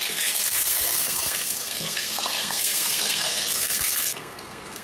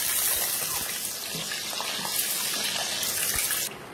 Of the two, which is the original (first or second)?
second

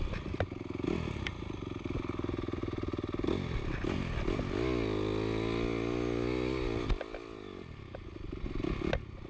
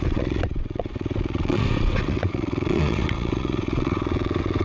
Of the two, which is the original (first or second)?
first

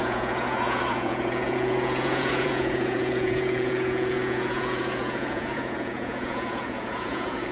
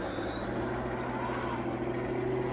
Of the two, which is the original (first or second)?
second